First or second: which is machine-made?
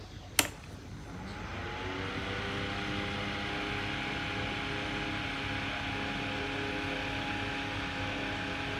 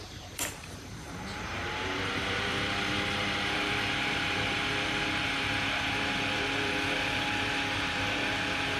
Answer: second